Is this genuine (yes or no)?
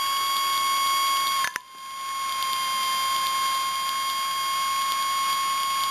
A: yes